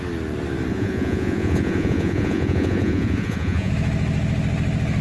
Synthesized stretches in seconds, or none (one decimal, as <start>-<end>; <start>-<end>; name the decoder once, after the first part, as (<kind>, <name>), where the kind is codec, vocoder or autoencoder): 0.7-3.7 (vocoder, Vocos)